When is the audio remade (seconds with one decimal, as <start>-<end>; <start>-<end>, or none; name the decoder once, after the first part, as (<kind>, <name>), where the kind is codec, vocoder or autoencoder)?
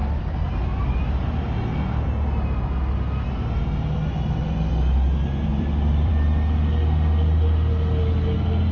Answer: 5.5-6.1 (vocoder, BigVGAN v2)